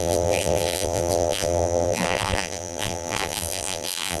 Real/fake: fake